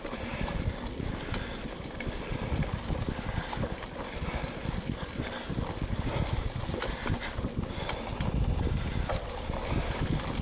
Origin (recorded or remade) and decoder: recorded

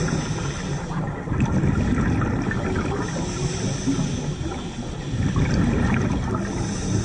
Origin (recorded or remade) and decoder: recorded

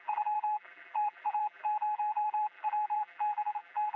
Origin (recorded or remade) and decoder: remade, vocoder, BigVGAN v2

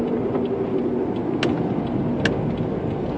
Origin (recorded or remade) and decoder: recorded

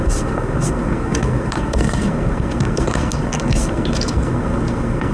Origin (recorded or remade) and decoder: remade, codec, SNAC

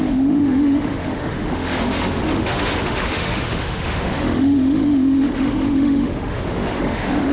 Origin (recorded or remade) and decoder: remade, autoencoder, DAC-VAE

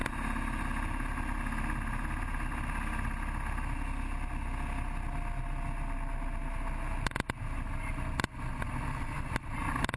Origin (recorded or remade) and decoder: recorded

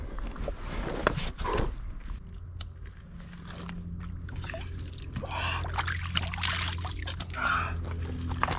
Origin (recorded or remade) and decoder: recorded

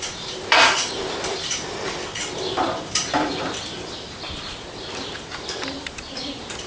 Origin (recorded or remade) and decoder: remade, vocoder, BigVGAN v2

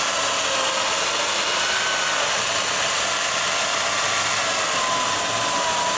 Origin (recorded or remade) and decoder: recorded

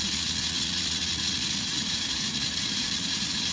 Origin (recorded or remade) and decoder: remade, vocoder, Vocos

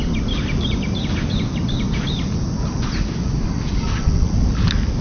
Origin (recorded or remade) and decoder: recorded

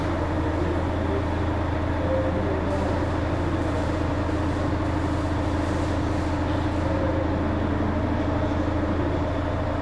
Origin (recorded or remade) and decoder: recorded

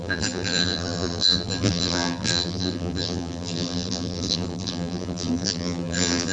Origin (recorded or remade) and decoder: remade, vocoder, BigVGAN v2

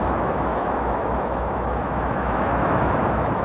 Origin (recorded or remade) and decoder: remade, autoencoder, DAC-VAE